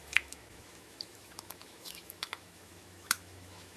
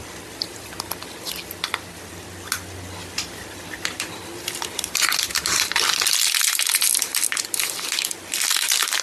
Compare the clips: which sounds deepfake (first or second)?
first